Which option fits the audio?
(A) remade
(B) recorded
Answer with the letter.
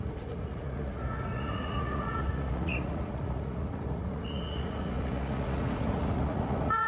A